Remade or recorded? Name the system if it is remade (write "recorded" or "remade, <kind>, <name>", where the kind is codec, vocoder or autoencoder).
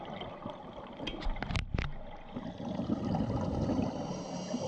recorded